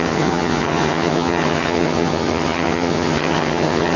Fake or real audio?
fake